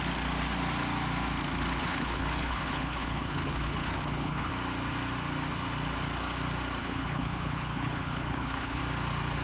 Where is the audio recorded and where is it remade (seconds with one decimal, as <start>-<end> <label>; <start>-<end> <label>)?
0.0-1.8 recorded; 1.8-4.5 remade; 4.5-6.8 recorded; 6.8-8.8 remade; 8.8-9.4 recorded